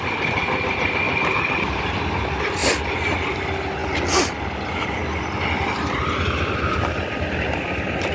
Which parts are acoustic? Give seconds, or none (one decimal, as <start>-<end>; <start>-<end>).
0.0-3.8; 4.4-8.1